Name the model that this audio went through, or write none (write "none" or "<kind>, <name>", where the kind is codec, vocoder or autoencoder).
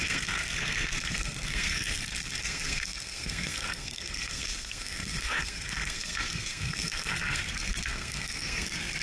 codec, SNAC